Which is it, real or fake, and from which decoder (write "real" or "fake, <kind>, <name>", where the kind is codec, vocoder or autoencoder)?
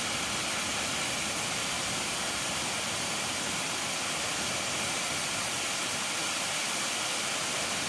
real